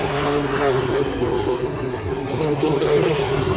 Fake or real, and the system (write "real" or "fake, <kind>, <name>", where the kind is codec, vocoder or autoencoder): fake, codec, SNAC